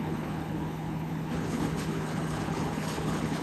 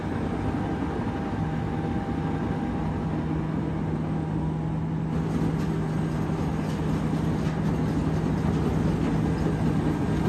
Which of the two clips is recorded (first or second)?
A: second